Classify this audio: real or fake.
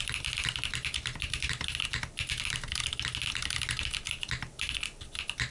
real